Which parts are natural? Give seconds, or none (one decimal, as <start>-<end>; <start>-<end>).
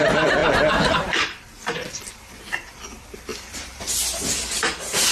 none